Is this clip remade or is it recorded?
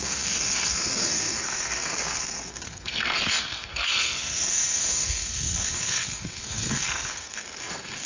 remade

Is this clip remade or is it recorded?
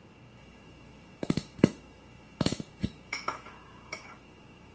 remade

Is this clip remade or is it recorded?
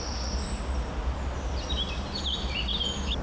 recorded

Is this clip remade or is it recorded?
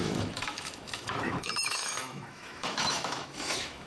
remade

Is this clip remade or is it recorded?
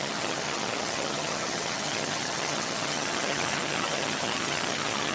remade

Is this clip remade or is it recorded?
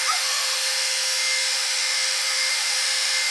remade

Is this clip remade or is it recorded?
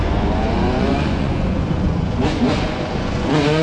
remade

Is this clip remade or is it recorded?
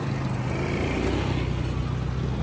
recorded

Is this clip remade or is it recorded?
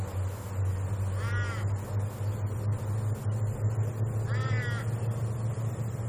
recorded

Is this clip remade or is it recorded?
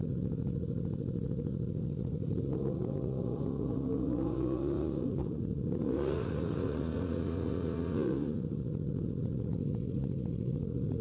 remade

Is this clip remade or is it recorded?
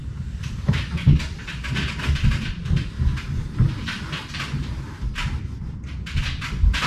recorded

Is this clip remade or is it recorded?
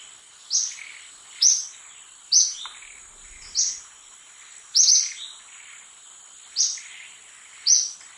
recorded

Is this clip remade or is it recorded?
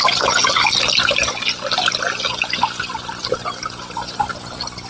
recorded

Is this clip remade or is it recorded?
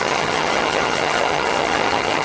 remade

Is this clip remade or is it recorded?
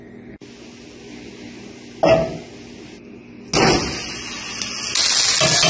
recorded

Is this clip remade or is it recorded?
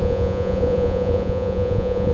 remade